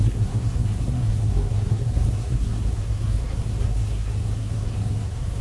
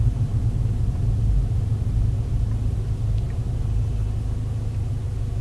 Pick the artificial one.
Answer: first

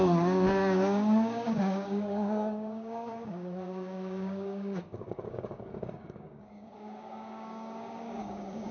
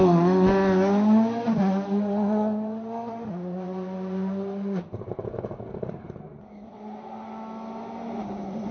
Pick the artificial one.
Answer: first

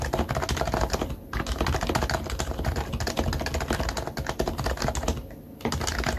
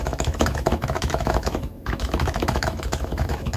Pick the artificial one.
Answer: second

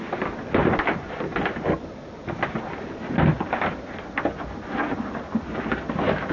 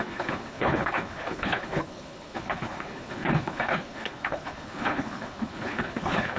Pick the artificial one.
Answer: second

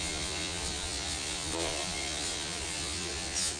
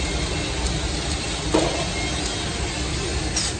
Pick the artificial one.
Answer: first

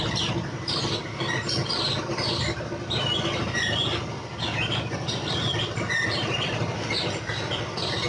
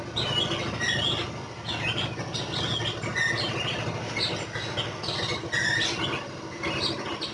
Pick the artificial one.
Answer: first